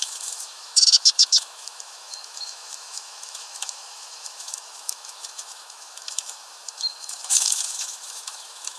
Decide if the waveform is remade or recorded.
remade